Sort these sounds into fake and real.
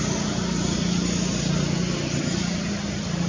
real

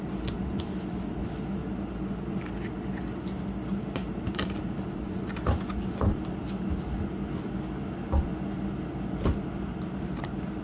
real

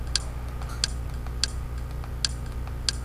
real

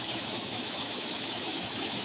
fake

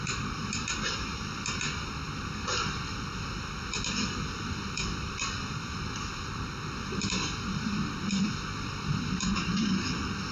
fake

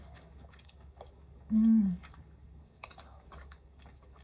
fake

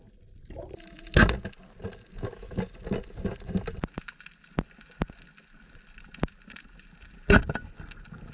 real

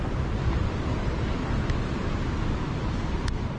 real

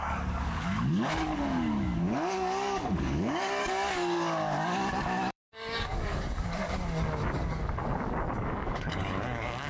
fake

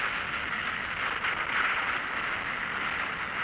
real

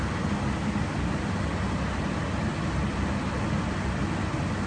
real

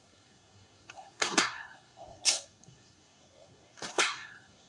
fake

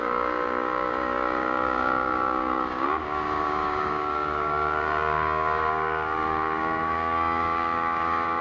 fake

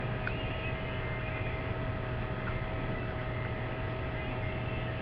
real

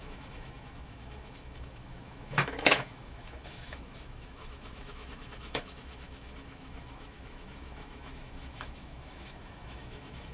fake